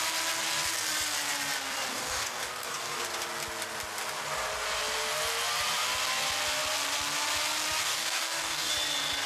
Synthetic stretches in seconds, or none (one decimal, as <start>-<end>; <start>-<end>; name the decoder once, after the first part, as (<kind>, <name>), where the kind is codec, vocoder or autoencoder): 1.9-3.0 (codec, DAC); 7.8-8.7